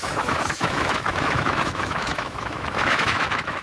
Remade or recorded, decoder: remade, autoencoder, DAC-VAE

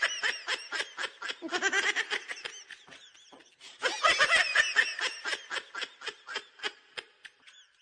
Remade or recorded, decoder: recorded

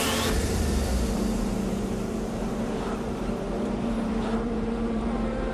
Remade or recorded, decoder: remade, vocoder, BigVGAN v2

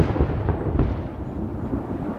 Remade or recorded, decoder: recorded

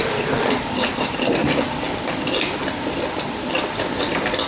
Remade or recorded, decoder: recorded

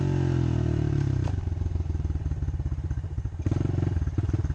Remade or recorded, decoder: recorded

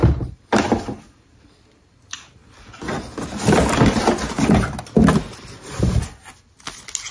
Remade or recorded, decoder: recorded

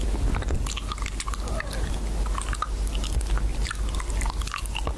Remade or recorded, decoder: recorded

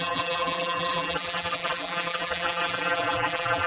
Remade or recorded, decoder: remade, vocoder, BigVGAN v2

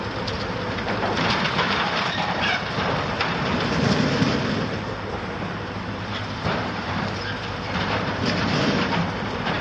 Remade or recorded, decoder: remade, vocoder, BigVGAN v2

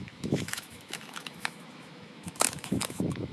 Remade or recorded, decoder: remade, autoencoder, DAC-VAE